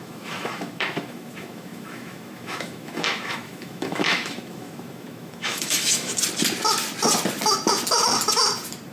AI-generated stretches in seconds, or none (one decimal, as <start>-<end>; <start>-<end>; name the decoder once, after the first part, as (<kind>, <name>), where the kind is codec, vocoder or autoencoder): 0.0-6.1 (autoencoder, DAC-VAE)